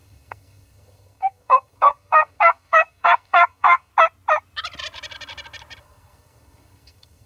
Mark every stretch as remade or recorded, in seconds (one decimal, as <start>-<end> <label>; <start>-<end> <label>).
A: 0.0-3.9 remade; 3.9-5.8 recorded; 5.8-7.3 remade